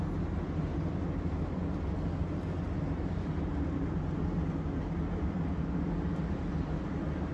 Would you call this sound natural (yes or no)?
yes